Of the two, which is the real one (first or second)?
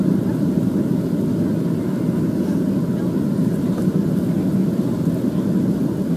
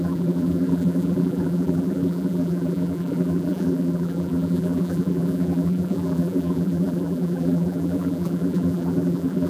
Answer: first